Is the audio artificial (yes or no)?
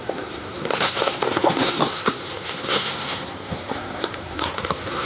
yes